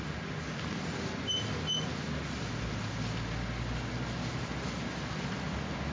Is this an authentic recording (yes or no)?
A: yes